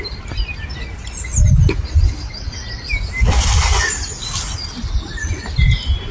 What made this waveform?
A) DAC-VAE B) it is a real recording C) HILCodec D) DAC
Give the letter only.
B